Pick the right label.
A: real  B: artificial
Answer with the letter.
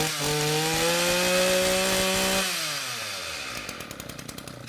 A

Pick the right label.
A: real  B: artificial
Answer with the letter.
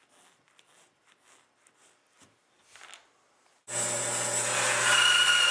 A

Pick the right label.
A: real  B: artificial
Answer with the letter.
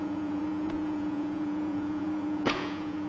B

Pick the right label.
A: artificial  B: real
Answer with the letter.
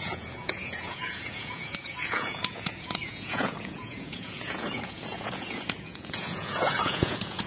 A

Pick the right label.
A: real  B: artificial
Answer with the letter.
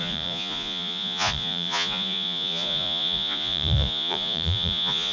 B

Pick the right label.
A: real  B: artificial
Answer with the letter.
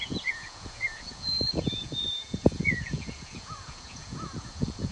B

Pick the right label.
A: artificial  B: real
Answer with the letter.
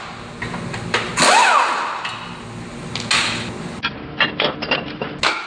B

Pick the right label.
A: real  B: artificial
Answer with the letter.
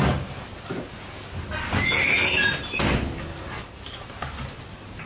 A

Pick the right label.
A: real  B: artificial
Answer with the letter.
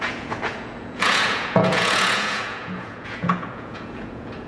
B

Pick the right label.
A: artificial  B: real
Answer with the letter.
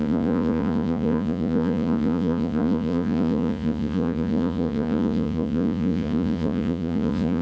A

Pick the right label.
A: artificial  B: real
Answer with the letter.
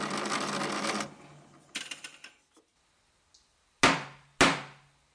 B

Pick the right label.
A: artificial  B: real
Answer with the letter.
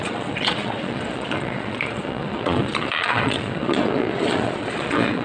A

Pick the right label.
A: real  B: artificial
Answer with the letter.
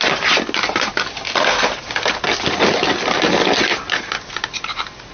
A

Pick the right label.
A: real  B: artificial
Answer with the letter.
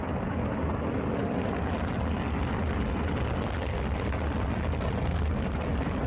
A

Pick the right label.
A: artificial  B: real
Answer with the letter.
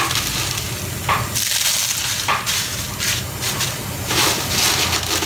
B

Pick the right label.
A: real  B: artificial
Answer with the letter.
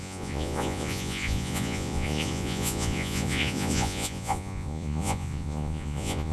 B